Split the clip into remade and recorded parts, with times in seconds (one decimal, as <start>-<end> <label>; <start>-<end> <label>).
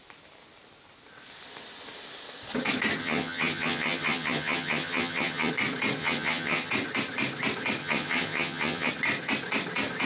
0.0-3.0 recorded; 3.0-5.5 remade; 5.5-6.0 recorded; 6.0-6.7 remade; 6.7-7.8 recorded; 7.8-8.9 remade; 8.9-10.1 recorded